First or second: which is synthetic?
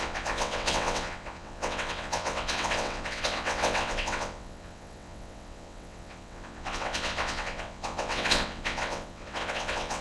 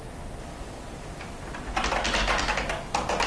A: first